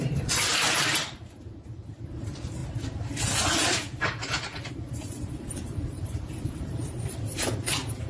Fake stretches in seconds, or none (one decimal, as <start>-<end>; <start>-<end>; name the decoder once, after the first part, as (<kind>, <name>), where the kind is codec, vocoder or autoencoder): 0.0-2.6 (vocoder, BigVGAN v2); 4.7-8.1